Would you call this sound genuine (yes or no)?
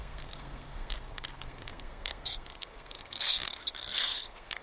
no